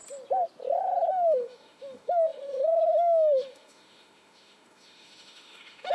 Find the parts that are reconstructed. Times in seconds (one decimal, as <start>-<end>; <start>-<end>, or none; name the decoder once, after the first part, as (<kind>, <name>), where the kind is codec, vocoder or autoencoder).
1.1-5.9 (autoencoder, DAC-VAE)